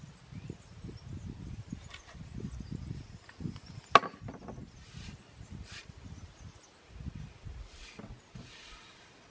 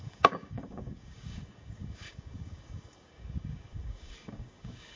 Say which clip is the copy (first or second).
second